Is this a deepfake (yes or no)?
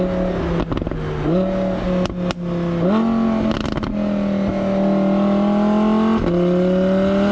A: no